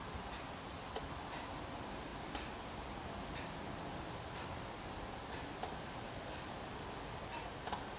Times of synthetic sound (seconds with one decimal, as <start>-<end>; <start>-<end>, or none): none